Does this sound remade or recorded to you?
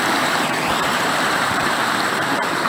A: remade